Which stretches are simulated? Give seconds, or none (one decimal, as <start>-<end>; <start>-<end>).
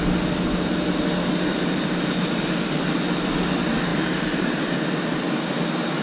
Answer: 3.9-4.6